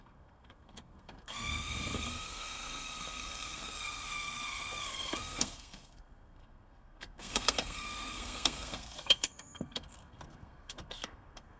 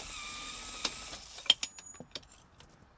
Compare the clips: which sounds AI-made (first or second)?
first